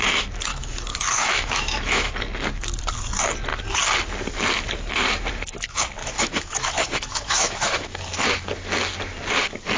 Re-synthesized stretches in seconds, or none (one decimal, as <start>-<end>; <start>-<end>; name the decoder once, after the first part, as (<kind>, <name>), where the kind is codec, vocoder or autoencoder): 0.5-2.1 (autoencoder, DAC-VAE); 6.0-8.1

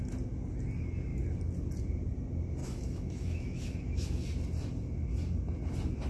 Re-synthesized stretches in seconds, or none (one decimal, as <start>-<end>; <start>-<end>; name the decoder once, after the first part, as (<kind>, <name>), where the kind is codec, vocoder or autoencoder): 2.6-4.2 (autoencoder, DAC-VAE)